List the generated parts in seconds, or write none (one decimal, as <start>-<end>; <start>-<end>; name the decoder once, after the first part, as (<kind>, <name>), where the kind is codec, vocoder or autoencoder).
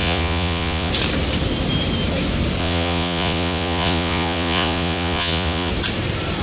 0.0-0.9 (vocoder, Vocos); 2.6-5.7